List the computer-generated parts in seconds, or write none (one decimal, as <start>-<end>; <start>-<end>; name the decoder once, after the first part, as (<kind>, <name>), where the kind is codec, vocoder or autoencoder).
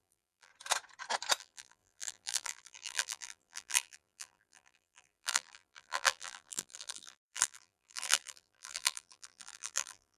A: 0.0-0.5 (vocoder, BigVGAN v2); 1.4-10.2